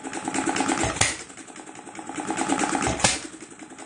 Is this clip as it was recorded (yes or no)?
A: yes